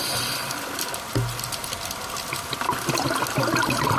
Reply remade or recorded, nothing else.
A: recorded